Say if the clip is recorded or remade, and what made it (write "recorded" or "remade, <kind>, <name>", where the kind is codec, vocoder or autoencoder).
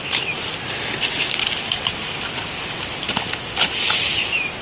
recorded